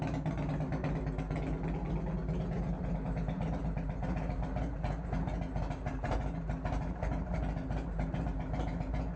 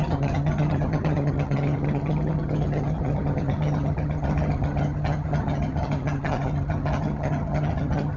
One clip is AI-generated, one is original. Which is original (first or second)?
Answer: first